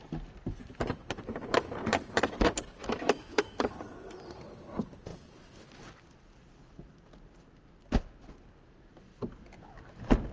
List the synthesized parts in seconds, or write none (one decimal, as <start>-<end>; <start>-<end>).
2.8-3.7